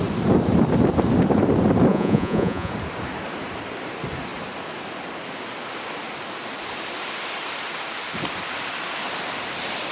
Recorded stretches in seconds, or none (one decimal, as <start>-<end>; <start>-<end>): 0.0-1.9; 2.7-9.9